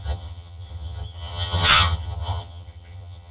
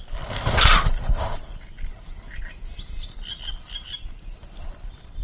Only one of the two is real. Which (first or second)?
second